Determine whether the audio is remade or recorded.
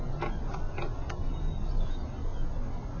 recorded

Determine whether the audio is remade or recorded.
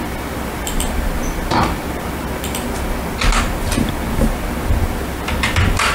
recorded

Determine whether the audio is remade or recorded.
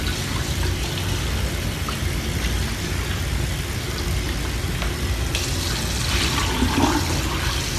recorded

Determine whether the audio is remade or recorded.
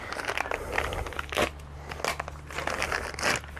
recorded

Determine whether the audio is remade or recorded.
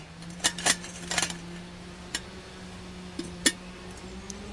recorded